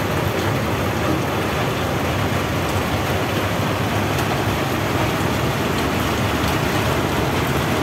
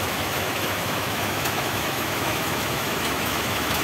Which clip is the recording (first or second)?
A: first